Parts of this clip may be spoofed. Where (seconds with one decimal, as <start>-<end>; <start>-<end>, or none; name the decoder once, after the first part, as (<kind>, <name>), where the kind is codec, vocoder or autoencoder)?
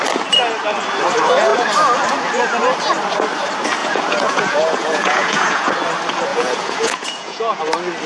3.8-5.7 (vocoder, Vocos); 6.3-7.6